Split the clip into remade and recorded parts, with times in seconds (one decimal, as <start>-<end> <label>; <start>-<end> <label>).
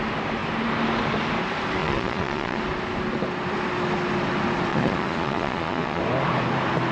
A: 0.0-1.8 recorded; 1.8-2.6 remade; 2.6-4.7 recorded; 4.7-6.0 remade; 6.0-6.9 recorded